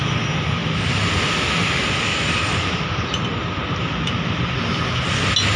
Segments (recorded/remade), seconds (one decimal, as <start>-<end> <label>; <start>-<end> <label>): 0.0-5.6 recorded

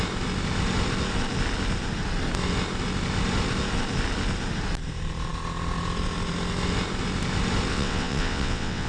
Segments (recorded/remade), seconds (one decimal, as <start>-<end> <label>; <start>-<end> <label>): 0.0-7.7 recorded; 7.7-8.9 remade

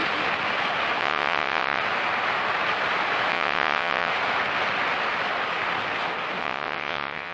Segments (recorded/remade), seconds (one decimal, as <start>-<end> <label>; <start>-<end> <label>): 0.0-1.0 recorded; 1.0-1.8 remade; 1.8-3.3 recorded; 3.3-4.1 remade; 4.1-6.4 recorded; 6.4-7.3 remade

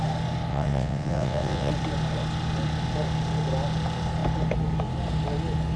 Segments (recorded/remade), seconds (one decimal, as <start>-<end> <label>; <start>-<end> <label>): 0.0-0.5 recorded; 0.5-1.7 remade; 1.7-5.8 recorded

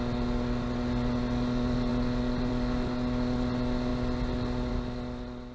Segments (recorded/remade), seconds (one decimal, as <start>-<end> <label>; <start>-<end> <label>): 0.0-5.5 recorded